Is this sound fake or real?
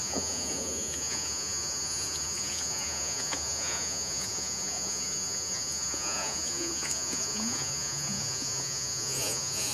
fake